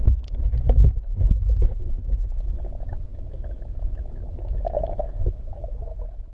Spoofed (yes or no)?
yes